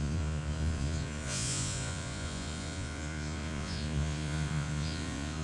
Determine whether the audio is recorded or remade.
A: remade